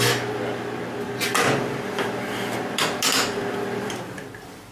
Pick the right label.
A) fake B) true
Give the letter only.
B